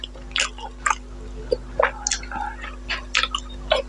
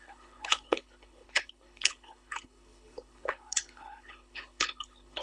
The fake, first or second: second